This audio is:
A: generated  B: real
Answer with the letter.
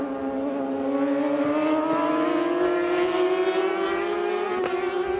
B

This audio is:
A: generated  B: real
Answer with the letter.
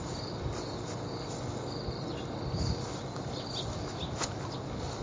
B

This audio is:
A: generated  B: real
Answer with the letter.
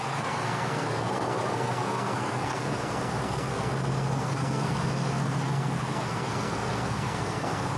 A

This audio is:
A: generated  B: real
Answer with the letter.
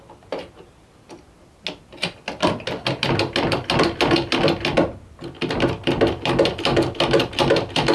B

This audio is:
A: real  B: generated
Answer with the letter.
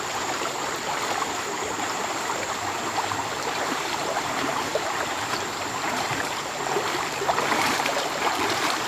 B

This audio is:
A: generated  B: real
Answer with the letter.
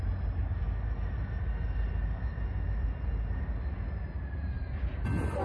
B